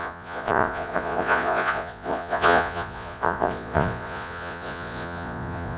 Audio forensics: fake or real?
fake